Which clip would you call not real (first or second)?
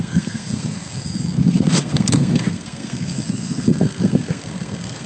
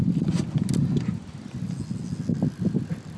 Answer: first